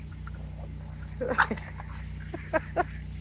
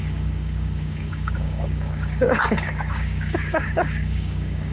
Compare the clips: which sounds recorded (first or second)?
first